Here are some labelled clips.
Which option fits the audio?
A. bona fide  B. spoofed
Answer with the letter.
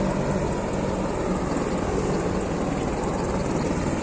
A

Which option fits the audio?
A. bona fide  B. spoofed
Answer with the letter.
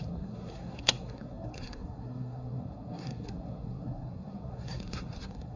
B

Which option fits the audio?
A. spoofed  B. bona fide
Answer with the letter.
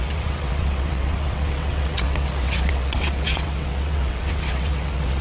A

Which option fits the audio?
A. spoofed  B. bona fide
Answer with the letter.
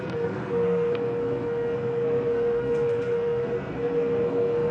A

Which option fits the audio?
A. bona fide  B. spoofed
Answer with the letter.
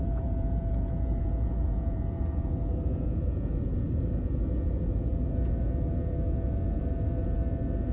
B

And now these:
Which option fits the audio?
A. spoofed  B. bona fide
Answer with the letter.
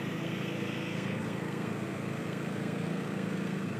A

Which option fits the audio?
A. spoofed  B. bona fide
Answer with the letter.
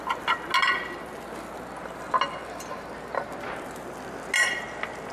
B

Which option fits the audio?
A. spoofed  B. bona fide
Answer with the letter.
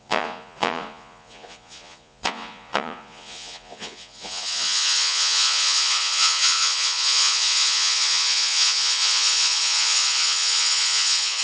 A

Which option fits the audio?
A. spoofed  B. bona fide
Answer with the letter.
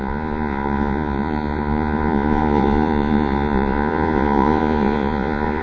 A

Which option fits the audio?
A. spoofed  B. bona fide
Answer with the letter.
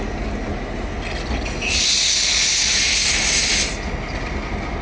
B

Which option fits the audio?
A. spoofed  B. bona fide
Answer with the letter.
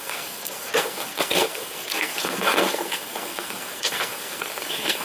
A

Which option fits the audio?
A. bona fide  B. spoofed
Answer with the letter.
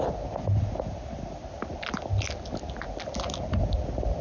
A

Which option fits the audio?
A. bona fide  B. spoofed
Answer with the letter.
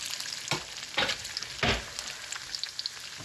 A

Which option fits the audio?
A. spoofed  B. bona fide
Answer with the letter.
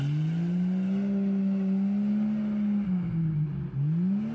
B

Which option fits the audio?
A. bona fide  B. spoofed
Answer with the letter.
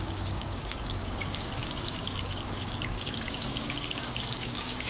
B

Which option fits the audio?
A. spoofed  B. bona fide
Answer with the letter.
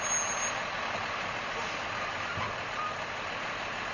B